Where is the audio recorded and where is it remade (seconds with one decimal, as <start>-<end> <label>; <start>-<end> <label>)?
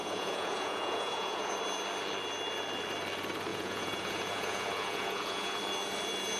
0.0-1.5 remade; 1.5-3.5 recorded; 3.5-5.6 remade; 5.6-6.4 recorded